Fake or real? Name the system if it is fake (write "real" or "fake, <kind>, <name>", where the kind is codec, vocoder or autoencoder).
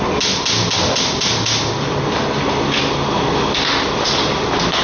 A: real